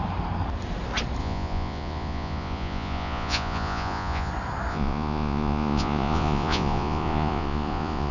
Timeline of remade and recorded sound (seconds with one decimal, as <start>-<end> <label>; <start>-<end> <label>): 0.0-1.2 recorded; 1.2-4.3 remade; 4.3-4.7 recorded; 4.7-8.1 remade